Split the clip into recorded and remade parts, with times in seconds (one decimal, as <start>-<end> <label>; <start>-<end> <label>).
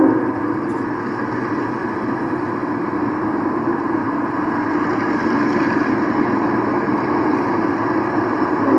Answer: 0.0-8.8 recorded